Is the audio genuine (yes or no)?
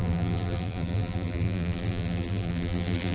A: no